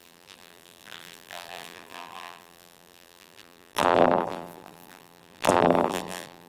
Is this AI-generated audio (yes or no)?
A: yes